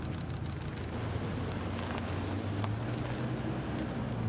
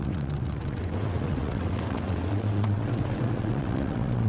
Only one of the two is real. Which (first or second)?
first